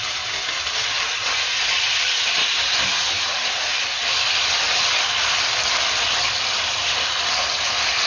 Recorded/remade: recorded